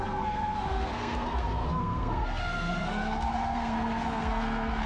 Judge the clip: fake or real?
fake